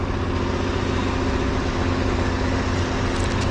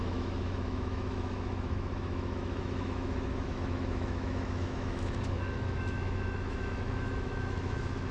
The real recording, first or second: first